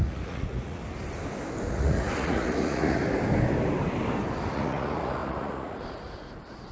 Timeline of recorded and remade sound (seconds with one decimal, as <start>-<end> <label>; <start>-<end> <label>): 0.0-0.8 remade; 0.8-1.7 recorded; 1.7-3.0 remade; 3.0-4.5 recorded; 4.5-6.7 remade